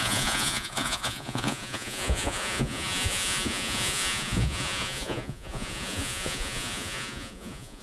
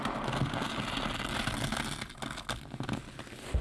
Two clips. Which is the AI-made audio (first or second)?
first